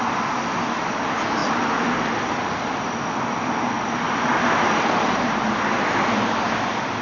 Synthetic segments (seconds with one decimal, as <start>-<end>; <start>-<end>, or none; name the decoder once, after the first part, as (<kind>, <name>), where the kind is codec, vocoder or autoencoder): 1.4-5.6 (vocoder, BigVGAN v2)